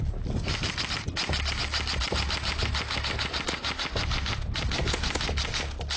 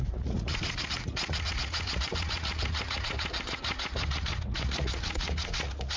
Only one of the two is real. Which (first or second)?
first